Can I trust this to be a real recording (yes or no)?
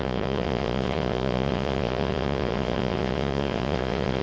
no